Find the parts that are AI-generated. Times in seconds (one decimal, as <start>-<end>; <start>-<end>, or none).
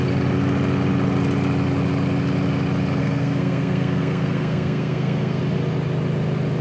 3.0-5.4